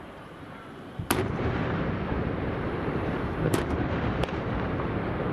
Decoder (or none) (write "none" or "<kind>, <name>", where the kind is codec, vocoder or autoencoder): vocoder, BigVGAN v2